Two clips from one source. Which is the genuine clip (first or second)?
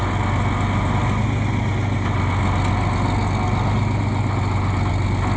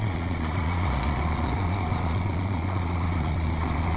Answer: first